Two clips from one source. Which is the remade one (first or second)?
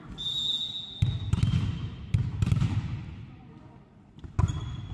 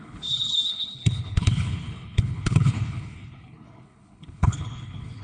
second